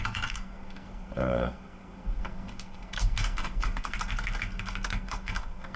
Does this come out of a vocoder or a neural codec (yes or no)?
yes